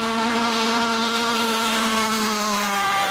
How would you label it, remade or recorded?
remade